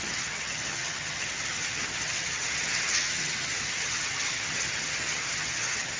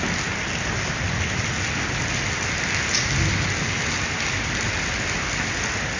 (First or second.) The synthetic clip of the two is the first